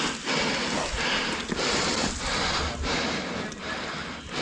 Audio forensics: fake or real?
real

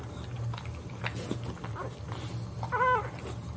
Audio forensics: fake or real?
real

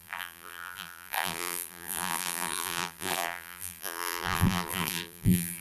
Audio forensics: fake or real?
fake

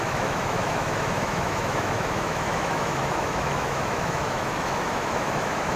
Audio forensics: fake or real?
fake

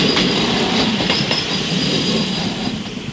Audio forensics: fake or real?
real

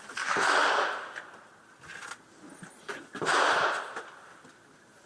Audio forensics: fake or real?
real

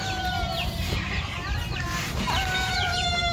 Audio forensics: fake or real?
fake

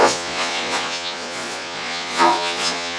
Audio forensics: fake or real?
fake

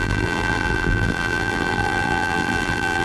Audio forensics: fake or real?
fake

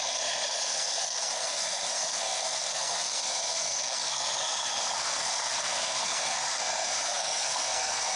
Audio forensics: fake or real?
fake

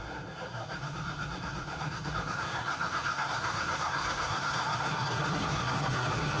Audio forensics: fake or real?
fake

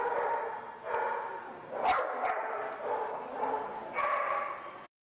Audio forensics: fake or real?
real